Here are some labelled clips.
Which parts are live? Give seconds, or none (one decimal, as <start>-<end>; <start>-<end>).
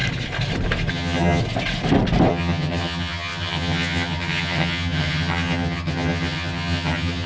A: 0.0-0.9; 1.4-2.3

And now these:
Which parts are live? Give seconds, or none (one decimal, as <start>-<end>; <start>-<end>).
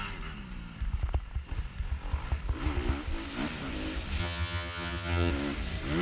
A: 0.0-4.2; 5.3-6.0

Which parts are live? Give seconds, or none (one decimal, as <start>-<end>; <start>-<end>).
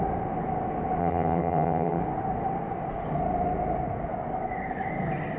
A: 0.0-1.0; 2.0-5.4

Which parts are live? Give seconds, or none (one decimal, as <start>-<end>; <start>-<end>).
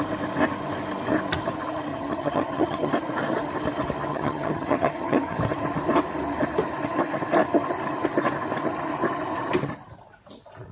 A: 0.0-1.9; 2.9-4.1; 5.4-10.7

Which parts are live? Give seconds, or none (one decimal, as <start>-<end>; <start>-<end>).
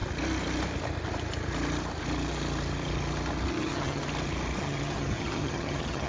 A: 0.0-3.5; 4.0-4.6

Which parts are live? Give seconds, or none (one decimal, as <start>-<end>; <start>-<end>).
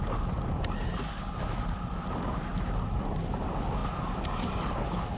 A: 0.0-5.2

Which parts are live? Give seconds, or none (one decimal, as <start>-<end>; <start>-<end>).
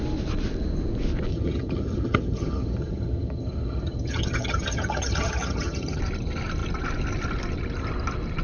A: 0.0-1.3; 6.0-8.4